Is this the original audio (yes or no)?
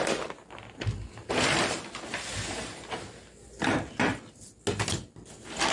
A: yes